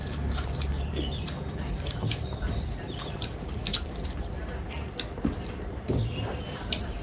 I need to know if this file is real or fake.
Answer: fake